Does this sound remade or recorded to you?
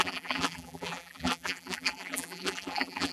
remade